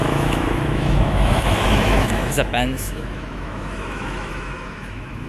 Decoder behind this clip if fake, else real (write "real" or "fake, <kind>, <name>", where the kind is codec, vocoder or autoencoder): fake, autoencoder, DAC-VAE